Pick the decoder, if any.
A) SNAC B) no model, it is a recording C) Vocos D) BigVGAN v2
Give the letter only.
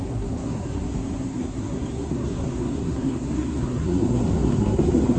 A